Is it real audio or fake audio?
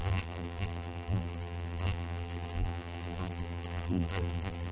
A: fake